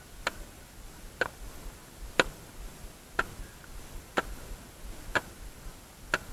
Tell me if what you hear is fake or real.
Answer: real